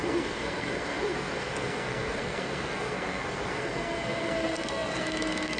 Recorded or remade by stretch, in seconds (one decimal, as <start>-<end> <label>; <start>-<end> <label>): 0.0-5.6 remade